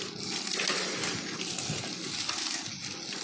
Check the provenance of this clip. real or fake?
real